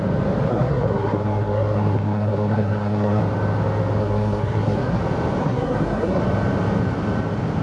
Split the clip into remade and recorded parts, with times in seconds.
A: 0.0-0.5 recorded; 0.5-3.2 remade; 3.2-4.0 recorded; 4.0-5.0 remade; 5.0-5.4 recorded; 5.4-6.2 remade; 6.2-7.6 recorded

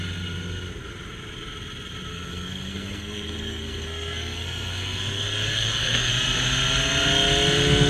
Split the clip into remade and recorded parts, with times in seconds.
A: 0.0-2.1 recorded; 2.1-6.1 remade; 6.1-7.9 recorded

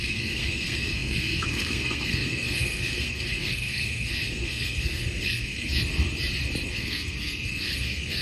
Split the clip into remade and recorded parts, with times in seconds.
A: 0.0-5.7 remade; 5.7-6.7 recorded; 6.7-8.2 remade